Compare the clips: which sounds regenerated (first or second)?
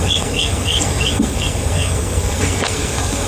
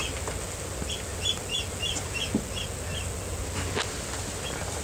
first